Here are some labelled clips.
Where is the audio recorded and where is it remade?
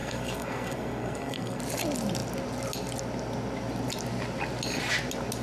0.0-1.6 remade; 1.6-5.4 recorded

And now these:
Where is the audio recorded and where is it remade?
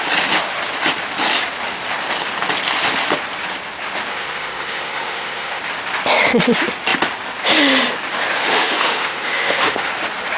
0.0-4.1 recorded; 4.1-5.6 remade; 5.6-8.4 recorded; 8.4-9.9 remade; 9.9-10.4 recorded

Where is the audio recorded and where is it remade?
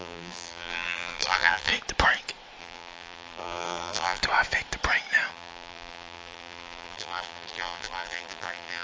0.0-1.7 remade; 1.7-2.6 recorded; 2.6-4.2 remade; 4.2-5.3 recorded; 5.3-8.8 remade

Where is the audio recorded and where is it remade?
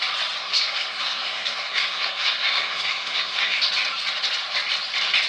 0.0-0.4 recorded; 0.4-3.6 remade; 3.6-5.3 recorded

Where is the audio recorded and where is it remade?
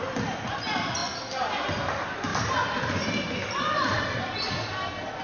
0.0-5.2 recorded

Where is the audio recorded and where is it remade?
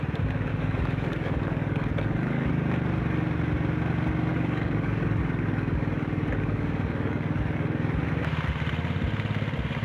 0.0-0.5 recorded; 0.5-2.5 remade; 2.5-4.3 recorded; 4.3-8.0 remade; 8.0-9.8 recorded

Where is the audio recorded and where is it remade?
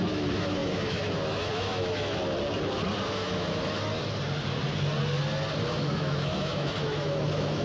0.0-2.2 remade; 2.2-3.0 recorded; 3.0-3.9 remade; 3.9-5.7 recorded; 5.7-7.6 remade